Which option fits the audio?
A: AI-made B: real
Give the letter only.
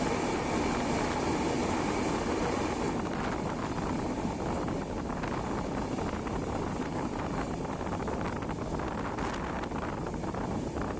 B